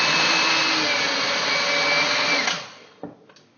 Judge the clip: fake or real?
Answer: real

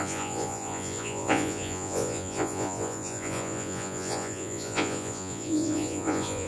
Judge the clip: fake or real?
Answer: fake